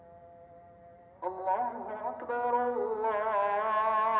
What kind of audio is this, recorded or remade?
recorded